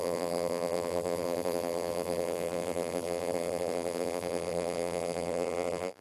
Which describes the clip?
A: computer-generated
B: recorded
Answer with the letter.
A